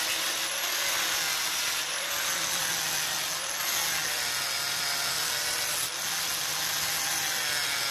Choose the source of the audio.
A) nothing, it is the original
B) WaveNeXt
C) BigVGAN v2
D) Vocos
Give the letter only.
A